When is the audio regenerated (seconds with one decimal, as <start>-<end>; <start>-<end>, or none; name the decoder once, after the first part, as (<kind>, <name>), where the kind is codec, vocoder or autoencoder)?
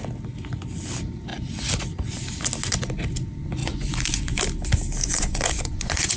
3.6-4.4 (vocoder, Vocos); 5.0-6.2